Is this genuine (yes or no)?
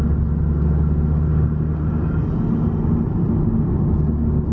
yes